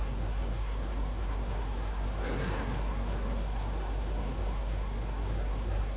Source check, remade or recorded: remade